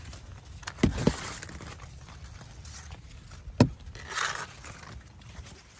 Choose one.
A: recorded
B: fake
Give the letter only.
A